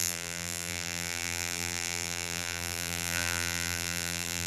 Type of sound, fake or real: fake